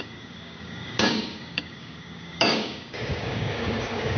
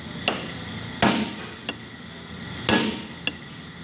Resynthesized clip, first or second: first